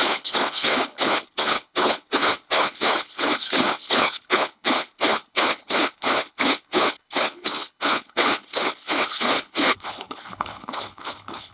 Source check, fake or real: fake